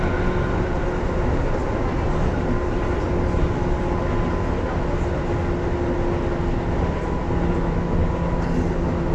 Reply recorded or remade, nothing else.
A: recorded